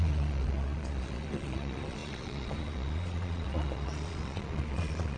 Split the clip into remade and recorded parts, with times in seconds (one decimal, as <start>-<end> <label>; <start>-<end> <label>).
0.0-5.2 remade